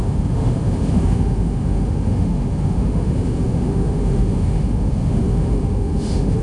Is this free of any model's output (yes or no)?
no